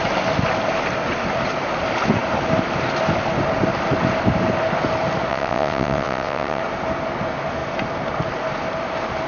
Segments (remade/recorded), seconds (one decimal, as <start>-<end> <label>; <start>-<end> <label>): 0.0-5.3 recorded; 5.3-6.6 remade; 6.6-9.3 recorded